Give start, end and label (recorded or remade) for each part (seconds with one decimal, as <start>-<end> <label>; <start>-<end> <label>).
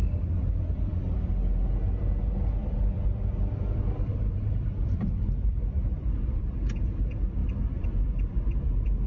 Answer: 0.0-1.1 remade; 1.1-2.6 recorded; 2.6-6.4 remade; 6.4-7.4 recorded; 7.4-8.5 remade; 8.5-9.1 recorded